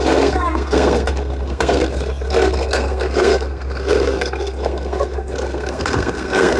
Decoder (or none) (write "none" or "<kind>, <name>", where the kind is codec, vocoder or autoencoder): codec, SNAC